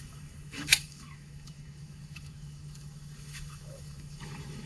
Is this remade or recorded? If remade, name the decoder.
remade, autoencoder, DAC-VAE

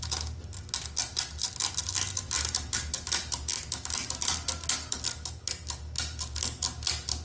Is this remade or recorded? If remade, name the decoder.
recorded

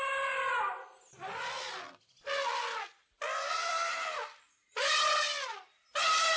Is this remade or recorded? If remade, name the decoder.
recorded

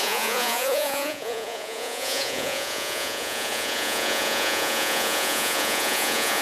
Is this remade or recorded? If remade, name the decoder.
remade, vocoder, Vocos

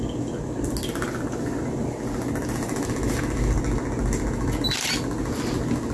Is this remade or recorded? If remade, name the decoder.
recorded